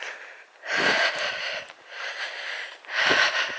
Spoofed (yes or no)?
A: no